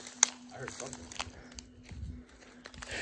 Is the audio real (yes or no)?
yes